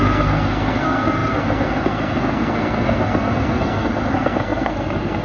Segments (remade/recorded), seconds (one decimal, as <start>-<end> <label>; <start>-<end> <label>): 0.0-5.2 remade